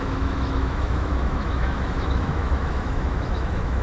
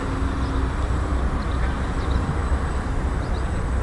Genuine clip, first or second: second